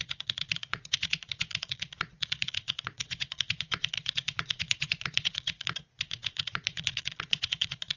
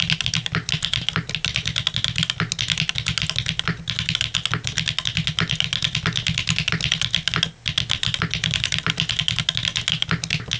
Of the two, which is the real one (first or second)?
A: second